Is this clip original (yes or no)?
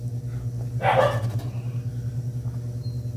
yes